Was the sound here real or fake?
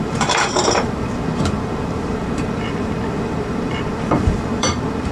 fake